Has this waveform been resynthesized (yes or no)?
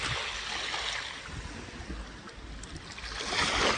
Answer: no